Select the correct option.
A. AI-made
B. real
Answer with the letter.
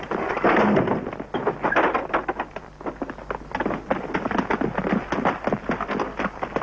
B